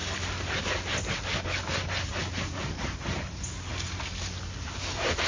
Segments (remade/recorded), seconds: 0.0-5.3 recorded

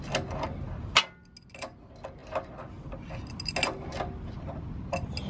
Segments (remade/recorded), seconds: 0.0-5.3 recorded

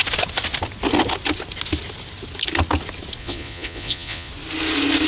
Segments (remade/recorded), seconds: 0.0-3.2 recorded; 3.2-4.3 remade; 4.3-5.1 recorded

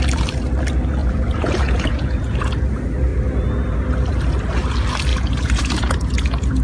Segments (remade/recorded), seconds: 0.0-1.0 recorded; 1.0-2.5 remade; 2.5-5.1 recorded; 5.1-6.6 remade

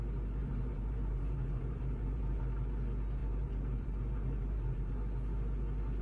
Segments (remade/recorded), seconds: 0.0-0.4 recorded; 0.4-2.4 remade; 2.4-3.2 recorded; 3.2-4.9 remade; 4.9-6.0 recorded